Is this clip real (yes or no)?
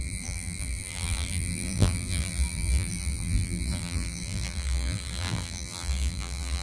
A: no